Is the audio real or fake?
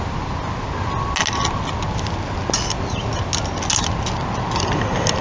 real